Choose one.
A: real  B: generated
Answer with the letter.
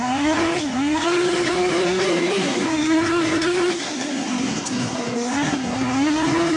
B